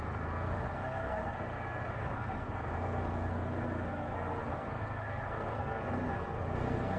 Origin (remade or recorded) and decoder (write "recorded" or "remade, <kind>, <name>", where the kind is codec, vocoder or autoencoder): remade, codec, SNAC